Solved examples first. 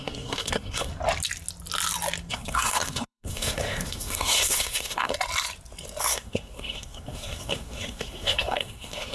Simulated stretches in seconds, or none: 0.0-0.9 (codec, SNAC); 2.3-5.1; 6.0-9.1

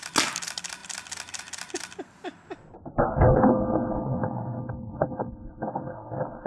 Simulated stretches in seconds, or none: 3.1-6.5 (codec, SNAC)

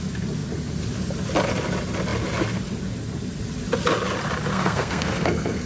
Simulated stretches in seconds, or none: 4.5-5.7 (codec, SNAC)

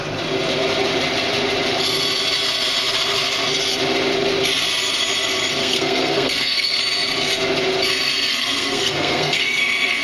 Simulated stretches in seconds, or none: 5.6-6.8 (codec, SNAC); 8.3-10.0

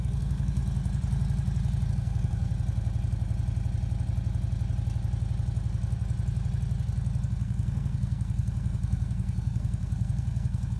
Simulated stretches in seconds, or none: 0.0-0.6 (codec, SNAC); 1.9-2.5; 7.3-10.8